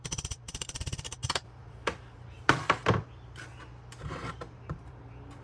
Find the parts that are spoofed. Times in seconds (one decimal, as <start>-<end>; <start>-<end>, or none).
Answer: 0.0-2.8; 4.0-5.4